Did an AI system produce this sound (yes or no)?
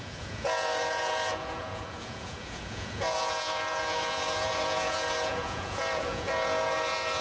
yes